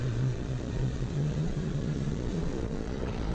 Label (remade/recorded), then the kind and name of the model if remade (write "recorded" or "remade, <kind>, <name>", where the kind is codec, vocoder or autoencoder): remade, vocoder, Vocos